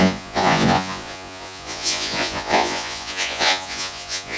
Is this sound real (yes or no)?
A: no